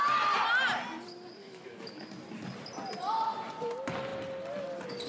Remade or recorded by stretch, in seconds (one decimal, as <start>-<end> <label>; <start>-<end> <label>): 0.0-1.4 recorded; 1.4-2.0 remade; 2.0-5.1 recorded